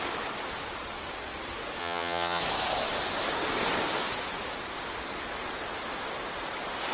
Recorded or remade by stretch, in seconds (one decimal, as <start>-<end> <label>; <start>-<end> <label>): 0.0-1.8 recorded; 1.8-2.4 remade; 2.4-6.9 recorded